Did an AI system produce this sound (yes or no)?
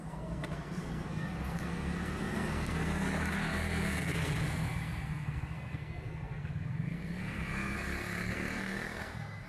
yes